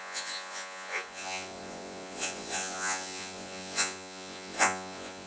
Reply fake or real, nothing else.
fake